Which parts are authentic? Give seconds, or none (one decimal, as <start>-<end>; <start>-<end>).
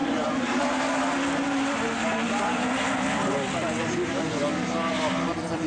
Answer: 0.6-5.7